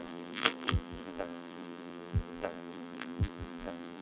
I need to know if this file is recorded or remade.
remade